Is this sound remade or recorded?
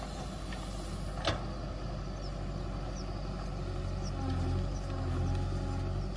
recorded